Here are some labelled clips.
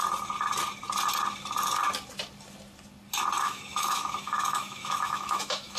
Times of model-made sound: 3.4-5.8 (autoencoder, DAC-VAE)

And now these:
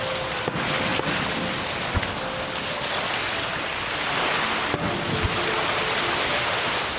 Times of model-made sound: none

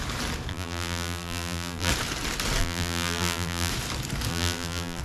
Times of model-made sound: 0.5-1.9 (vocoder, BigVGAN v2); 2.6-3.7; 4.3-5.0

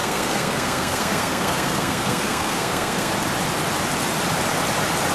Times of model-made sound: 0.0-3.1 (codec, SNAC)

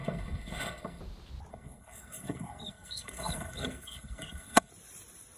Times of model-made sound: 0.0-1.0 (codec, SNAC); 1.5-4.7

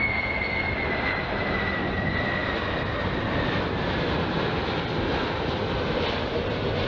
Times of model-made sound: 2.4-6.5 (vocoder, BigVGAN v2)